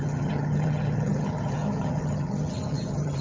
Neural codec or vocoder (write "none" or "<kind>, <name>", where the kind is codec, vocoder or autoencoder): vocoder, HiFi-GAN